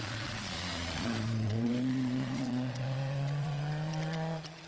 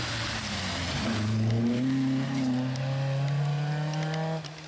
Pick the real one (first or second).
second